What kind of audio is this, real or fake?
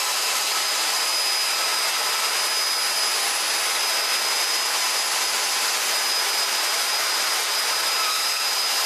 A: real